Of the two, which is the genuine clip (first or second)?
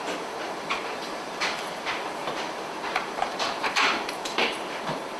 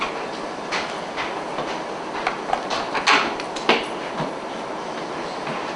second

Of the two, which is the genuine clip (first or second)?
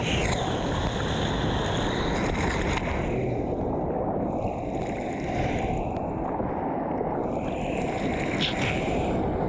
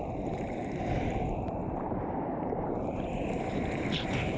first